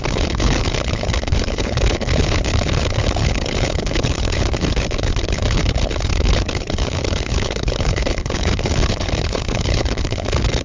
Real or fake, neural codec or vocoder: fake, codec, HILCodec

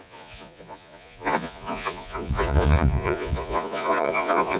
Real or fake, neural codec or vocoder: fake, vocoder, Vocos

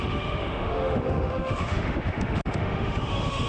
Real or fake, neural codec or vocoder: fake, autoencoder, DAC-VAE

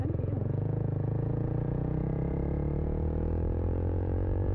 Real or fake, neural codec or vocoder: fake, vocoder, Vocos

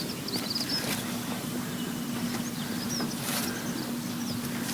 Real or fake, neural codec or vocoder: real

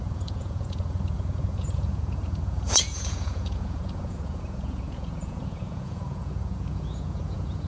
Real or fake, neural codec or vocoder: fake, vocoder, Vocos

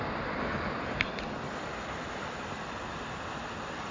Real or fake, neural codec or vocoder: real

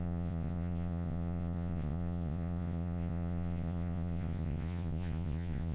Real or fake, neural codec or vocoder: fake, vocoder, Vocos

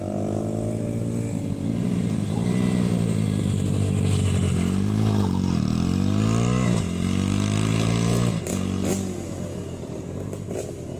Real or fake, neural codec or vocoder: real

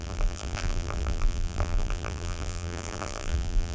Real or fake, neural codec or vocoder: fake, vocoder, BigVGAN v2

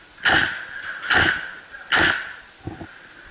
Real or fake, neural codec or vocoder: real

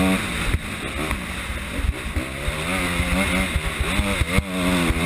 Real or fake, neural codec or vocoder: real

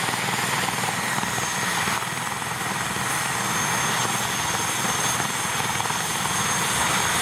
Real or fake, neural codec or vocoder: real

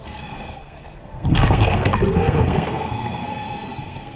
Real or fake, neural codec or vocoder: fake, codec, SNAC